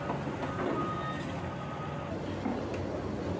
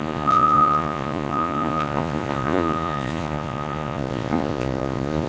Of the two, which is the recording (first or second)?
first